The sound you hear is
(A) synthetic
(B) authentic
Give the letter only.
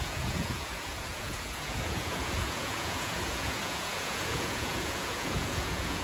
A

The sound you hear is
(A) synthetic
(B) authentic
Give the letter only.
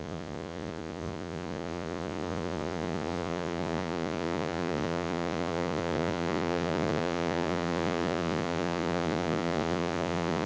A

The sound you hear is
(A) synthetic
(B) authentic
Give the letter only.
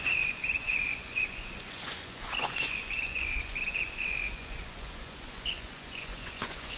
A